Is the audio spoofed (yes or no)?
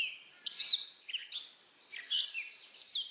no